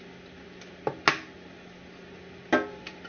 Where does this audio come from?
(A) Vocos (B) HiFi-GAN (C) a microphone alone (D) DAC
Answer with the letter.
C